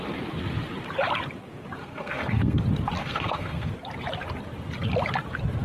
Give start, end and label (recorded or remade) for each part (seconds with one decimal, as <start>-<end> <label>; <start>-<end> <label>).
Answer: 0.0-1.8 recorded; 1.8-2.6 remade; 2.6-3.0 recorded; 3.0-3.7 remade; 3.7-5.6 recorded